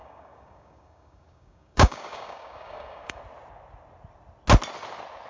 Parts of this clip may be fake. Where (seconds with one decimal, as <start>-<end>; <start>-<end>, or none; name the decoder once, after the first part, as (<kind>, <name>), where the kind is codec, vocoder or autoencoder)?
0.0-3.2 (codec, DAC)